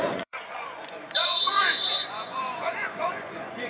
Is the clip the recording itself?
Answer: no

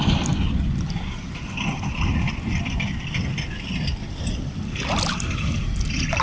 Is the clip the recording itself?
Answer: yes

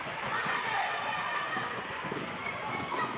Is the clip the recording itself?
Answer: no